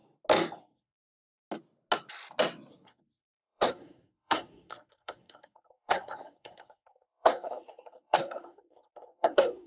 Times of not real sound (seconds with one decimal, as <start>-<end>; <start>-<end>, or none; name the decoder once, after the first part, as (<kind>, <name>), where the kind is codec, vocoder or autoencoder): 0.6-1.4 (codec, SNAC); 2.7-9.7